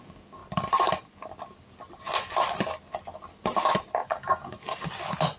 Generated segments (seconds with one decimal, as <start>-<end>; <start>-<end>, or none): 4.0-4.9